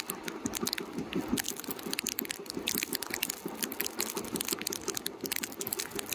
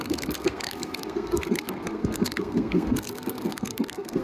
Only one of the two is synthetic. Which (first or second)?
second